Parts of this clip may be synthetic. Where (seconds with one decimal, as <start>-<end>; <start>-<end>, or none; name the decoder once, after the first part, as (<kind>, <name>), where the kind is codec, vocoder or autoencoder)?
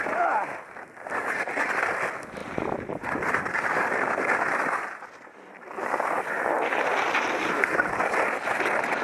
2.4-6.1 (vocoder, BigVGAN v2)